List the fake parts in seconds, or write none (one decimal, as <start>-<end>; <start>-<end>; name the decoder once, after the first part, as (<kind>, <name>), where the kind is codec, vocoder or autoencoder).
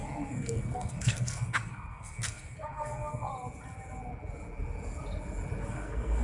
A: 0.0-3.3 (codec, SNAC); 5.7-6.2